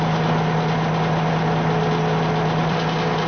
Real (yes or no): yes